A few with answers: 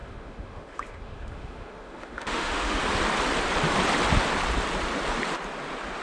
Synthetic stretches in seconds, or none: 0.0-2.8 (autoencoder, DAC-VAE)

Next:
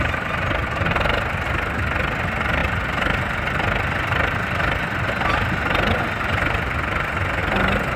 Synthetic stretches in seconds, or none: none

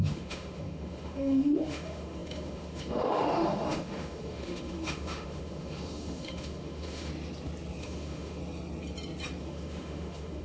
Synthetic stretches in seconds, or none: 0.0-7.1 (autoencoder, DAC-VAE); 7.8-8.4; 9.4-10.4

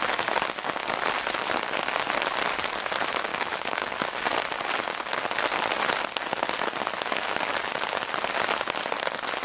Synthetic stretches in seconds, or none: 3.3-3.9 (autoencoder, DAC-VAE)

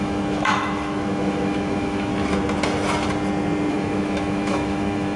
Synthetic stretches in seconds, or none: 0.0-2.1 (autoencoder, DAC-VAE); 3.7-5.2